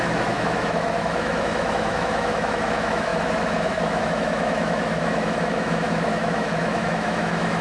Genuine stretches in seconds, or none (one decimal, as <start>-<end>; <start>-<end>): none